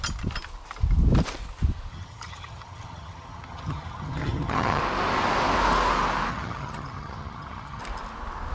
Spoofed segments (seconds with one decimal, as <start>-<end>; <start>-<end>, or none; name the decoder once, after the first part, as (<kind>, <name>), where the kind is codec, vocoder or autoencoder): 1.9-4.8 (vocoder, HiFi-GAN); 6.3-7.8